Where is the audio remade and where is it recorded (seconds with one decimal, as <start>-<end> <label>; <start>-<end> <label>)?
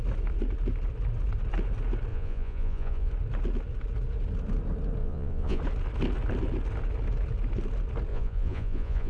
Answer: 0.0-2.1 recorded; 2.1-3.1 remade; 3.1-5.0 recorded; 5.0-5.6 remade; 5.6-8.1 recorded; 8.1-9.1 remade